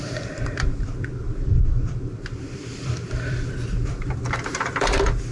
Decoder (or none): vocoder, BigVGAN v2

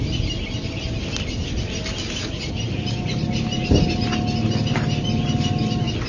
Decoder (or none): none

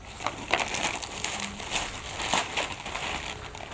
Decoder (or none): none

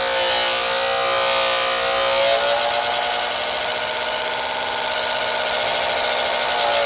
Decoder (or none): none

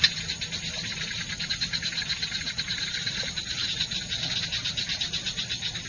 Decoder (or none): none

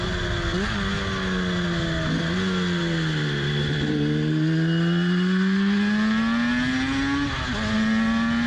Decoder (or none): none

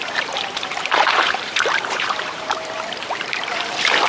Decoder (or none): vocoder, BigVGAN v2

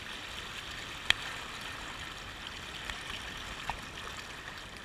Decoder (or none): none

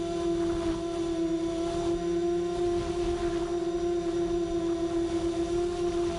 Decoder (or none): none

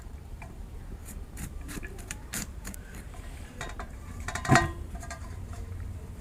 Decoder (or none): vocoder, BigVGAN v2